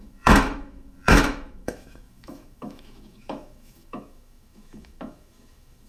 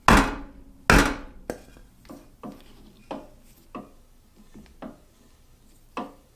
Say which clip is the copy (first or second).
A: first